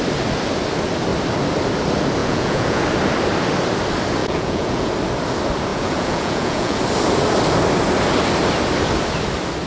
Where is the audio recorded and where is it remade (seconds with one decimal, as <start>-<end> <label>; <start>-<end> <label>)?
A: 0.0-2.2 recorded; 2.2-2.8 remade; 2.8-4.2 recorded; 4.2-4.9 remade; 4.9-5.7 recorded; 5.7-6.8 remade; 6.8-9.7 recorded